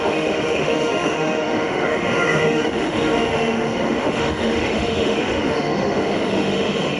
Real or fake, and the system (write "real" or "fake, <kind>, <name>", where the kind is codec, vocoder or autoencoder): fake, autoencoder, DAC-VAE